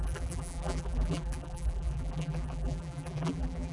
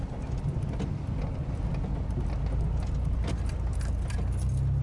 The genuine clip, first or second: second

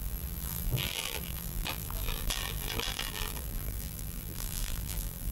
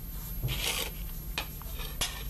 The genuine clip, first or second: second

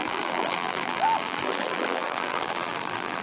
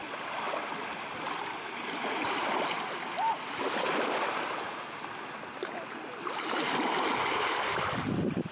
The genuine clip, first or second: second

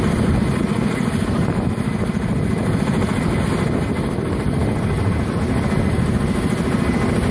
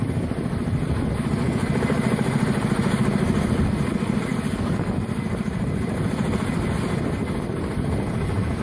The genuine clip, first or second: first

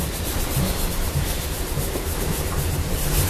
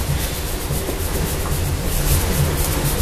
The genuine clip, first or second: second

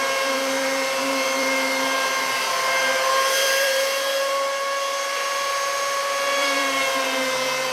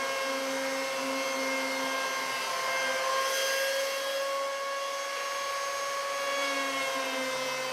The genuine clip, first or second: second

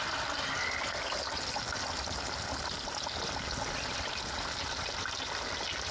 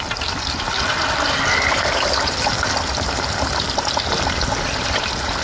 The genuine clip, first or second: first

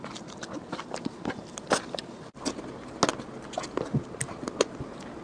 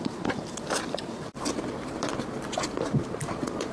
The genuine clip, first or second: first